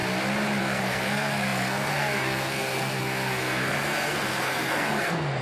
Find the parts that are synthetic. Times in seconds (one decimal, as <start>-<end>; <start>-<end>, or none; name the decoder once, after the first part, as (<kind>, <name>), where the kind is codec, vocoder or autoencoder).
0.6-5.4 (codec, SNAC)